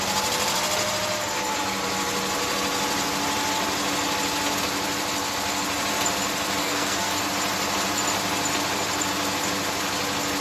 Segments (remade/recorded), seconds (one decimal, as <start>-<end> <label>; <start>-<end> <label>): 0.0-6.6 recorded; 6.6-7.1 remade; 7.1-10.4 recorded